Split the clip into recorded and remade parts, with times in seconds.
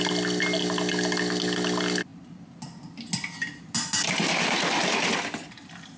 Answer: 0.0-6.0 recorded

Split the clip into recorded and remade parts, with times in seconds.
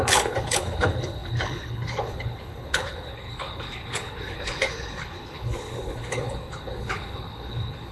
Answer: 0.0-7.9 remade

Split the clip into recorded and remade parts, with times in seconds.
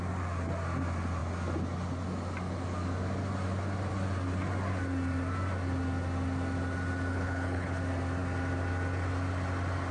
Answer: 0.0-7.1 recorded; 7.1-7.8 remade; 7.8-9.9 recorded